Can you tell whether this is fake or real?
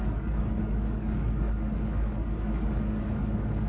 fake